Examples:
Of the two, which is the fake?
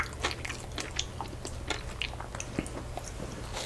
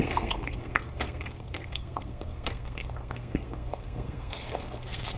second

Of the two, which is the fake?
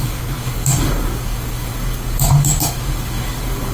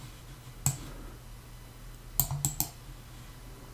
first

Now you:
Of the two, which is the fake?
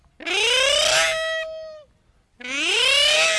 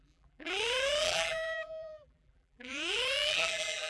second